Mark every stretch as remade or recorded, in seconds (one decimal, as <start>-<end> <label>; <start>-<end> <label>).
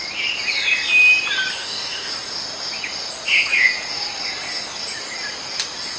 0.0-1.6 recorded; 1.6-2.1 remade; 2.1-6.0 recorded